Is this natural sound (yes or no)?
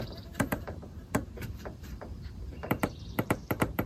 no